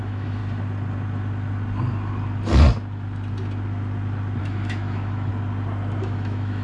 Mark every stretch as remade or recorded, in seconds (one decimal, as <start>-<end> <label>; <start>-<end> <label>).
0.0-0.4 remade; 0.4-4.4 recorded; 4.4-5.3 remade; 5.3-6.0 recorded; 6.0-6.6 remade